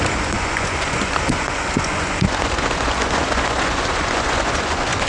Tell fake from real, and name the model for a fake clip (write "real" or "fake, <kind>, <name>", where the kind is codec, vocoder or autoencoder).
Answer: fake, vocoder, Vocos